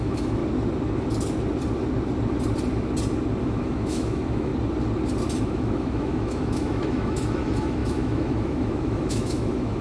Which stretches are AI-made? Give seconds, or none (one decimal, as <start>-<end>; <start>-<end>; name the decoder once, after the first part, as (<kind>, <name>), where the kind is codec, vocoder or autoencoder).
0.0-0.4 (autoencoder, DAC-VAE); 3.4-4.5; 5.4-9.8